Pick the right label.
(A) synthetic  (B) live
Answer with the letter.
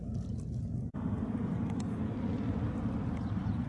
B